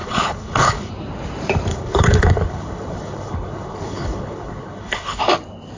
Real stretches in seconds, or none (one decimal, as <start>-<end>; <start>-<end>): 0.9-1.7; 5.2-5.8